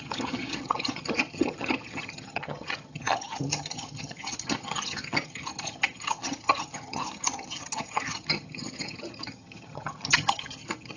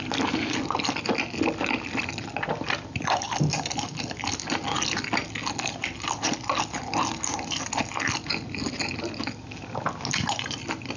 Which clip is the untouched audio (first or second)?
second